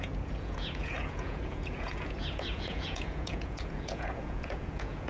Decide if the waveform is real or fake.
fake